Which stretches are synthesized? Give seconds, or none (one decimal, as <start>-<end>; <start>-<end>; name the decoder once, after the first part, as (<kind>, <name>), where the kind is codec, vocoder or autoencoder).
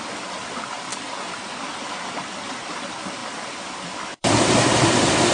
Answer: none